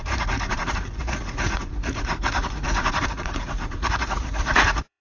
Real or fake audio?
fake